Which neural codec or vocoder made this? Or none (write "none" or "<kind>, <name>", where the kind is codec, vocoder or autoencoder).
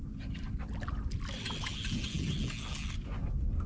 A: none